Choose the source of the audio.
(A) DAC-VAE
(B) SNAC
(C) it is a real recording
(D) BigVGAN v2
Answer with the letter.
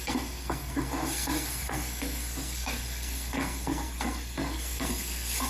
B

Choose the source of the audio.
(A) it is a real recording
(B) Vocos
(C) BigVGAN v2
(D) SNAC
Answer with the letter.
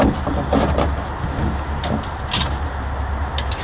A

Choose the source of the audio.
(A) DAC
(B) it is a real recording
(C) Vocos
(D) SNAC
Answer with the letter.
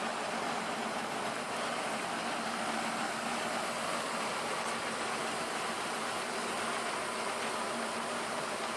B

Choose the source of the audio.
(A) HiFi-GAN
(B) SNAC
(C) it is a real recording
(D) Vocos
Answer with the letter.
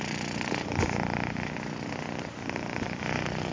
C